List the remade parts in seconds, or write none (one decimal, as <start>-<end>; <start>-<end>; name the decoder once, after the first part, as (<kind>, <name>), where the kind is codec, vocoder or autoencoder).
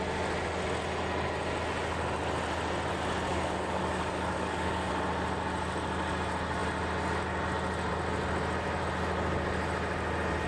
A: 3.3-4.9 (codec, DAC)